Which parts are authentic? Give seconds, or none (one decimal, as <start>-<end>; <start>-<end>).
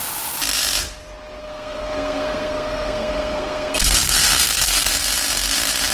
0.0-1.4; 4.9-5.9